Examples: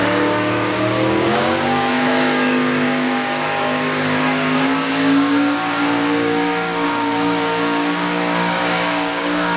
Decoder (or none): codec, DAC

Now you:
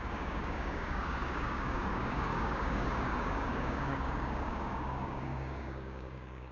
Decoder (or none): codec, DAC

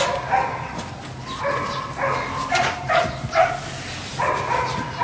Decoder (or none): none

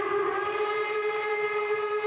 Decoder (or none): none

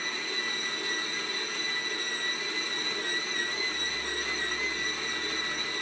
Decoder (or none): none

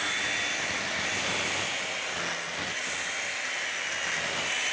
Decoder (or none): none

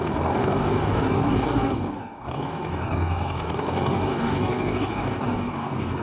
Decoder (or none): codec, DAC